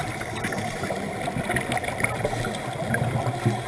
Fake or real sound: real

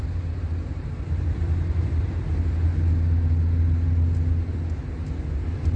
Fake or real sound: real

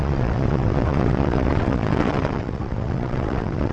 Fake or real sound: fake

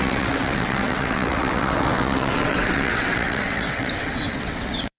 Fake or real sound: fake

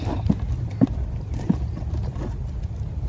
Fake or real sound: real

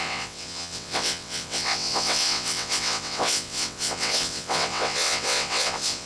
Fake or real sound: fake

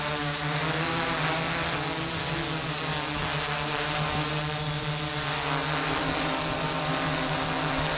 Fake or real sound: real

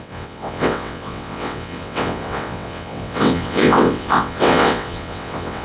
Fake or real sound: fake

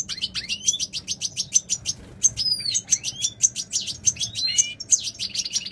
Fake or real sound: real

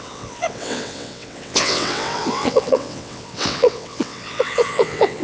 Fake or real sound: fake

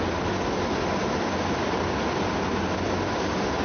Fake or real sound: real